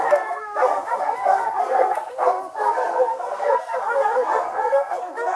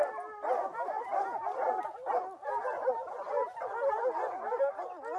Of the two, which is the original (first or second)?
second